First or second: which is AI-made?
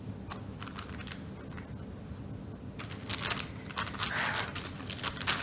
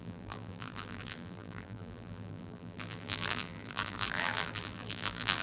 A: second